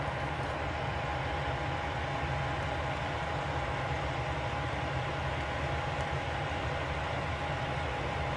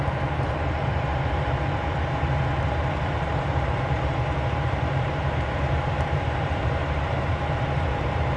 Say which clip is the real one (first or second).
first